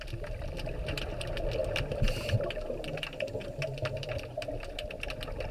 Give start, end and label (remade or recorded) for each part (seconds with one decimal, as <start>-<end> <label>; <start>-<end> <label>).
0.0-5.5 recorded